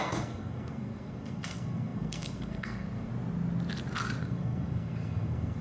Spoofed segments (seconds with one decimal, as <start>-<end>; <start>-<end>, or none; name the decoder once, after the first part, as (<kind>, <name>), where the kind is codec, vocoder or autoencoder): 0.0-3.1 (codec, SNAC); 4.2-5.6